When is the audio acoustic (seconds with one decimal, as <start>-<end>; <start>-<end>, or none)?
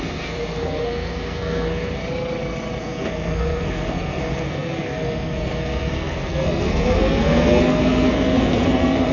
2.0-2.8